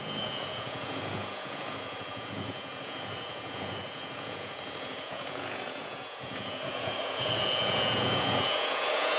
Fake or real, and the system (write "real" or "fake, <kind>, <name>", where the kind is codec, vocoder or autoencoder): fake, vocoder, Vocos